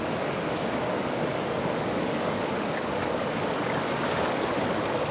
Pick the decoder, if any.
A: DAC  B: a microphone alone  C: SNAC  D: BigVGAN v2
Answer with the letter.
A